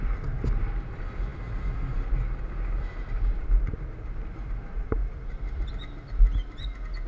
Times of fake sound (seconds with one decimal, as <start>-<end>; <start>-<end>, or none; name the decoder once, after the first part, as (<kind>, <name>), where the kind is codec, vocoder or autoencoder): 1.3-4.6 (vocoder, BigVGAN v2); 5.0-5.8